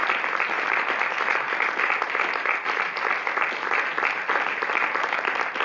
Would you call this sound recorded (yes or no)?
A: yes